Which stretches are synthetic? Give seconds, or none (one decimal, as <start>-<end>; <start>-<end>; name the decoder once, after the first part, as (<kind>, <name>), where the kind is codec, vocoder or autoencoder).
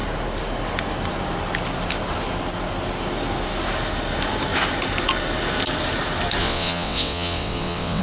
6.4-8.0 (vocoder, WaveNeXt)